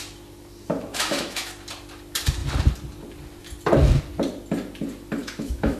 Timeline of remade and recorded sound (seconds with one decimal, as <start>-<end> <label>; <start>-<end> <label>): 0.0-0.9 recorded; 0.9-1.5 remade; 1.5-5.2 recorded; 5.2-5.8 remade